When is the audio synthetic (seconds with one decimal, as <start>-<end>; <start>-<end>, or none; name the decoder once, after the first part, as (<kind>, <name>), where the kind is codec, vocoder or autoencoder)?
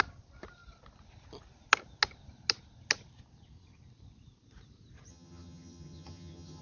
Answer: 5.1-6.6 (vocoder, HiFi-GAN)